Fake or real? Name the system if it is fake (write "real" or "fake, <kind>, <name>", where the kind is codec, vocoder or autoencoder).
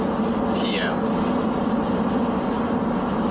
real